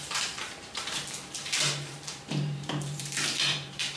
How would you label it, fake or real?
fake